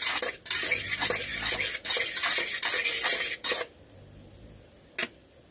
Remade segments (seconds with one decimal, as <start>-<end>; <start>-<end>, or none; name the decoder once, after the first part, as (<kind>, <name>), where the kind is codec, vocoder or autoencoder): none